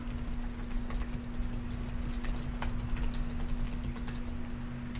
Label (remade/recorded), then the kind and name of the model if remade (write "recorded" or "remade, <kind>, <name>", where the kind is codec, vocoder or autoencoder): recorded